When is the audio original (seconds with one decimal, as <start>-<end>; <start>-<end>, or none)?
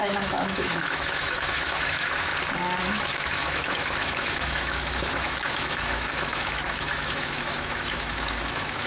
2.3-2.8